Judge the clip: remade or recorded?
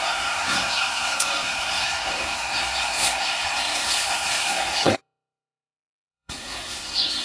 remade